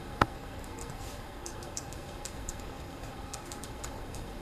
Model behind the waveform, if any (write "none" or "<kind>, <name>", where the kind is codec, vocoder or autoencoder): codec, SNAC